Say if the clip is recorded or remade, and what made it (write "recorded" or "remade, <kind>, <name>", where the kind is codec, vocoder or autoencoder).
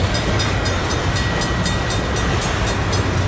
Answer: recorded